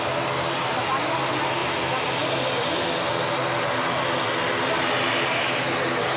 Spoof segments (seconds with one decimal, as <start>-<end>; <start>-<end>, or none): none